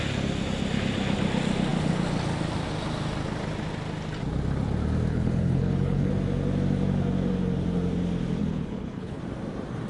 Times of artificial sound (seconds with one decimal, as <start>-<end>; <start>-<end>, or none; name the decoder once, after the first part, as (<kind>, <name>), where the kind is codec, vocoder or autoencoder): 5.1-6.1 (codec, HILCodec); 8.4-9.2